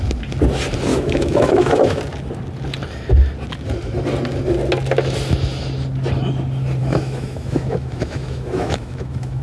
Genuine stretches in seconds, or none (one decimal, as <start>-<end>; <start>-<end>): 0.0-0.9; 2.0-6.8

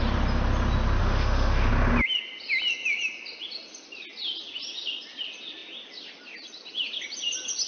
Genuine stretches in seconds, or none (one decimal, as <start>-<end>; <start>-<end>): 0.0-1.0; 1.7-7.7